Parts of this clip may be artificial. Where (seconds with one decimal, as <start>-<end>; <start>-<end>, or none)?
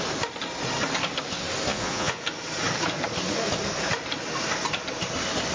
1.7-2.2